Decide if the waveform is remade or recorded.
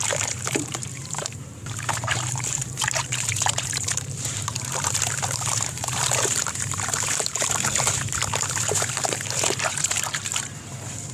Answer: remade